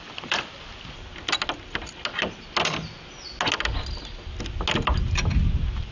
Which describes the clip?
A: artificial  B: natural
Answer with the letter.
B